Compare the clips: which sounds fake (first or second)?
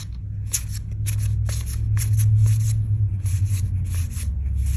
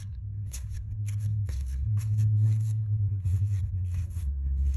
second